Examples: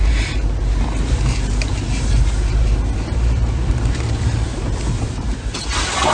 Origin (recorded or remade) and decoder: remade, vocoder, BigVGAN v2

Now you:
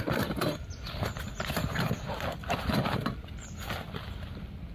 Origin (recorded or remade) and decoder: recorded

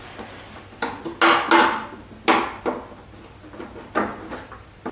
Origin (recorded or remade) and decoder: recorded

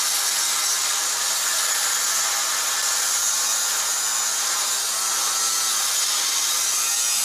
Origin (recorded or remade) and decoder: recorded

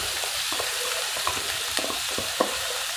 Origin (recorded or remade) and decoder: remade, vocoder, BigVGAN v2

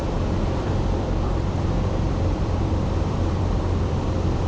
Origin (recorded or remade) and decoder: remade, vocoder, BigVGAN v2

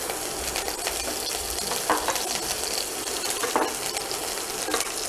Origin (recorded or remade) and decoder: recorded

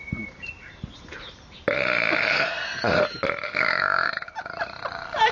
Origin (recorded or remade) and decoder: remade, vocoder, BigVGAN v2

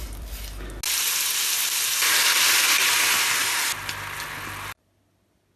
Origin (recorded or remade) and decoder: recorded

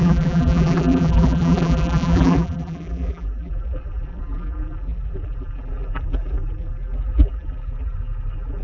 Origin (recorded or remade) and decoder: remade, vocoder, BigVGAN v2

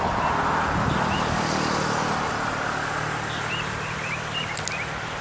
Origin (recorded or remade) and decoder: recorded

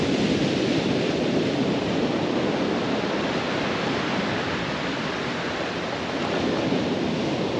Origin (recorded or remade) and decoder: remade, vocoder, BigVGAN v2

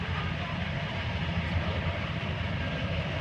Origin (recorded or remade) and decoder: remade, vocoder, BigVGAN v2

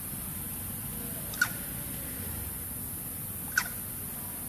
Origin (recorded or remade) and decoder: recorded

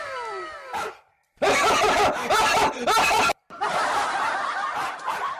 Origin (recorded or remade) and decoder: recorded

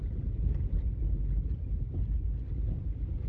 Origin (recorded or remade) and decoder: recorded